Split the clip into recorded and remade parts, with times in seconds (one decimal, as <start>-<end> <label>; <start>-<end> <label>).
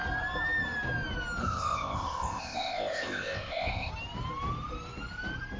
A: 0.0-1.4 recorded; 1.4-3.9 remade; 3.9-5.6 recorded